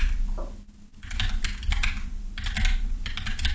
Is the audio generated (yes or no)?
no